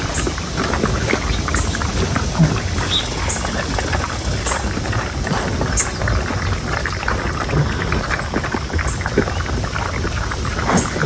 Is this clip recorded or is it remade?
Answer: recorded